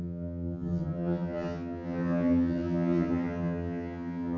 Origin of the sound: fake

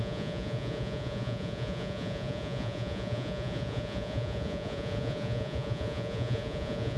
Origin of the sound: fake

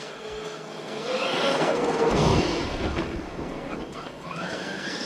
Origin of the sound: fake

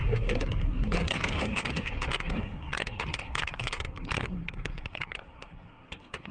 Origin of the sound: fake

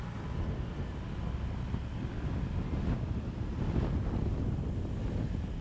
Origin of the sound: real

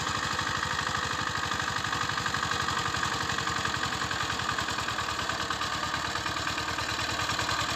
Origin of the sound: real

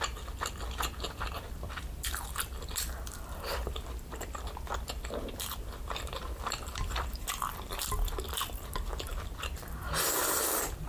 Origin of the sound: fake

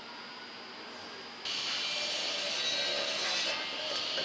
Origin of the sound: real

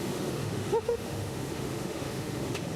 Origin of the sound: fake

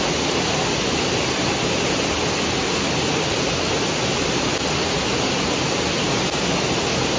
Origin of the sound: real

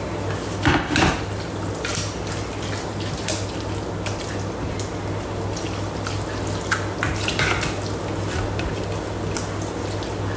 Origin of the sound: real